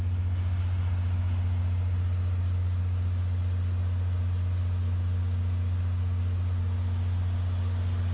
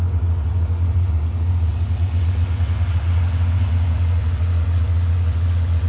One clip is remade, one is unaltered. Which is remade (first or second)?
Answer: second